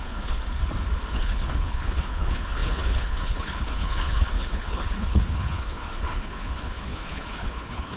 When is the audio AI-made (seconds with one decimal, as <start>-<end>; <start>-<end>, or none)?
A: 0.0-0.4; 1.1-8.0